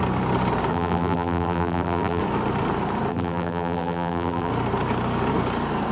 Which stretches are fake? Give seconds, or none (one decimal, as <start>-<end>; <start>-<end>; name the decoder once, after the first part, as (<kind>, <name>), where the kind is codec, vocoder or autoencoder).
0.7-2.2 (vocoder, BigVGAN v2); 3.1-4.5

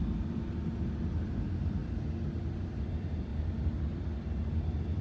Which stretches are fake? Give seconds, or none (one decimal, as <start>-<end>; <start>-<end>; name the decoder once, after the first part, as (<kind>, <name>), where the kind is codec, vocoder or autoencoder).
0.0-1.8 (vocoder, BigVGAN v2); 2.9-3.3; 4.0-5.0

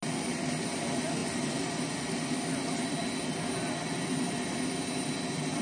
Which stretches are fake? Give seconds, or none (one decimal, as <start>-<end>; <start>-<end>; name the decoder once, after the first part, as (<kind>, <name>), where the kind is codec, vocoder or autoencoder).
none

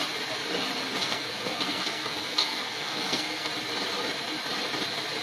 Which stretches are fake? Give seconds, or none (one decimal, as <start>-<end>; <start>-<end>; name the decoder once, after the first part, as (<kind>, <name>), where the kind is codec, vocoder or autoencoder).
1.0-3.5 (codec, SNAC)

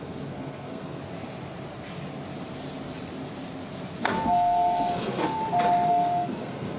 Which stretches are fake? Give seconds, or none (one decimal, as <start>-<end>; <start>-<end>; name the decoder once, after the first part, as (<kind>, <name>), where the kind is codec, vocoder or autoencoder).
0.0-1.0 (codec, SNAC); 4.0-5.4; 5.9-6.8

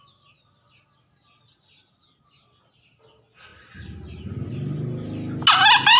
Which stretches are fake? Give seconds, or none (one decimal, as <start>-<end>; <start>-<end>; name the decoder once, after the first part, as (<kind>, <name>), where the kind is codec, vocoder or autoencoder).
none

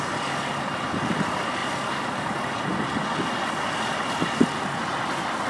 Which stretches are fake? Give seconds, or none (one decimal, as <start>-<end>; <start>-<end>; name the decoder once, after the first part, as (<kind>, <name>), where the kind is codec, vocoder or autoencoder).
none